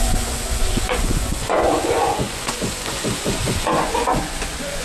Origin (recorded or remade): remade